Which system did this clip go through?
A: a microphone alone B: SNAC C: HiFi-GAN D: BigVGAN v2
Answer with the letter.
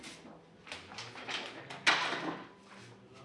A